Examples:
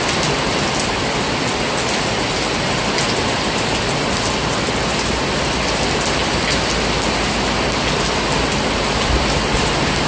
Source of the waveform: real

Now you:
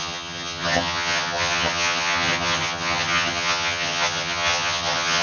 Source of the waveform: fake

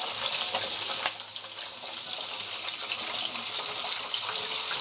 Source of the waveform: real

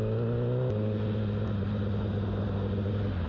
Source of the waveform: real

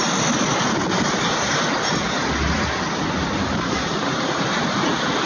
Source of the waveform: real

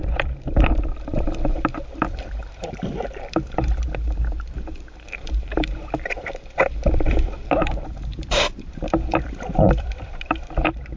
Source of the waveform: fake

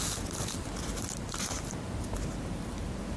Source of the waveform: real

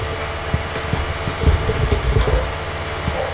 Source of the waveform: real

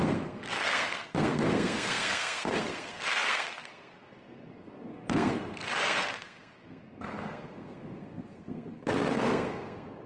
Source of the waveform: fake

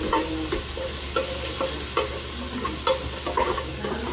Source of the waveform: real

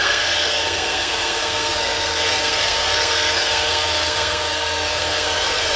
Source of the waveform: fake